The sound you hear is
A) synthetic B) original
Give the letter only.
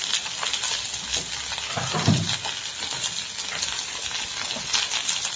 B